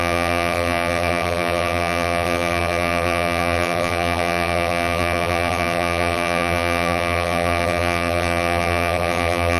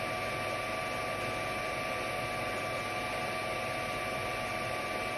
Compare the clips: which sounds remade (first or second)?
first